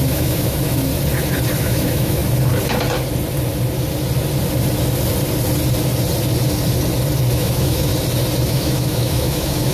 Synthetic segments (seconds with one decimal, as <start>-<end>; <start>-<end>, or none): 0.0-0.9; 1.6-2.2; 7.3-7.9; 8.5-9.7